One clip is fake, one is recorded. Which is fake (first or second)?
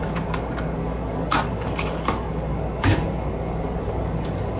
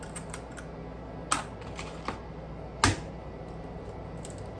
first